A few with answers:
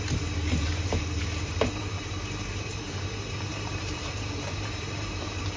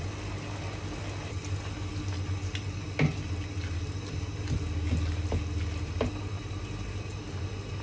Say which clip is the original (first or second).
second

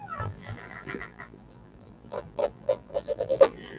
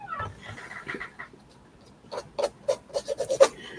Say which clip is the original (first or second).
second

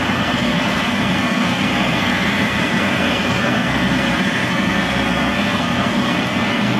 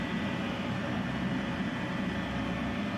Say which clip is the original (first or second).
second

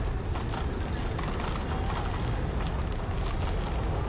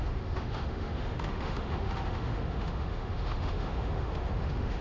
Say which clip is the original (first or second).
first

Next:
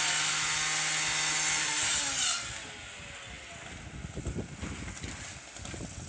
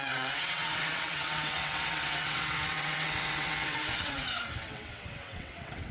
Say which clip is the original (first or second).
first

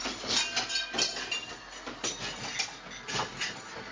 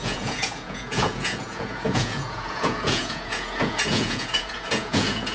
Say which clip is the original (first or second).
first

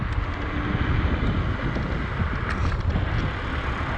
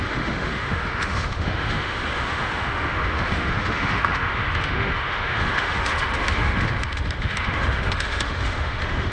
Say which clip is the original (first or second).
first